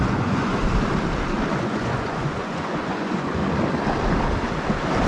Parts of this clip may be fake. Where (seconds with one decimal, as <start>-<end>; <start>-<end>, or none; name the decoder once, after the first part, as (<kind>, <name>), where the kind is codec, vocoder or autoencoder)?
0.0-0.6 (vocoder, Vocos); 1.6-3.4